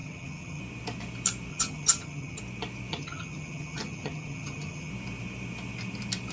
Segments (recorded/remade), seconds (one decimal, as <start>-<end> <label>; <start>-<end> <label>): 0.0-0.6 remade; 0.6-1.5 recorded; 1.5-2.4 remade; 2.4-2.9 recorded; 2.9-4.9 remade; 4.9-6.3 recorded